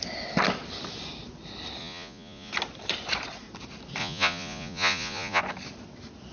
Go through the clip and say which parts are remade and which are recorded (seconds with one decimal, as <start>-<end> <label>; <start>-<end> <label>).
0.0-1.8 recorded; 1.8-2.5 remade; 2.5-4.0 recorded; 4.0-5.4 remade; 5.4-6.3 recorded